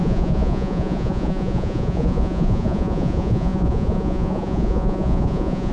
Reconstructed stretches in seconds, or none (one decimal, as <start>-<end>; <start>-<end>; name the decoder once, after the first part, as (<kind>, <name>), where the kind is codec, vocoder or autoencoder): 0.0-5.7 (vocoder, Vocos)